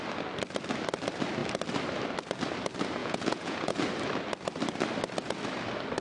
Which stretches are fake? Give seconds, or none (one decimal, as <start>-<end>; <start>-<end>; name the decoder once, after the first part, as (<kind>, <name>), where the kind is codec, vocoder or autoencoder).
3.0-3.8 (vocoder, Vocos)